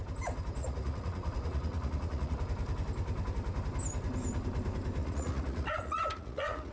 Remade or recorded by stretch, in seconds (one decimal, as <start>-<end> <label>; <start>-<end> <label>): 0.0-0.6 recorded; 0.6-2.4 remade; 2.4-5.0 recorded; 5.0-6.7 remade